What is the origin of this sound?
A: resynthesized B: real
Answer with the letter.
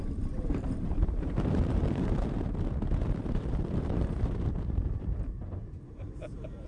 A